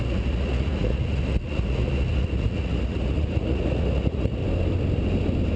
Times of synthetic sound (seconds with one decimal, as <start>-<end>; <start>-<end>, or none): 0.0-4.4